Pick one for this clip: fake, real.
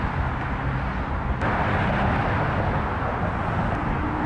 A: real